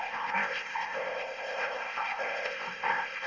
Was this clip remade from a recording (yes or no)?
yes